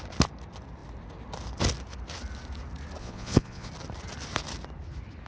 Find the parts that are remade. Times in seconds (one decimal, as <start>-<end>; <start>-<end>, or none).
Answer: 3.0-3.7